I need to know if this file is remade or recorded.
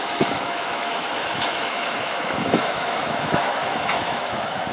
remade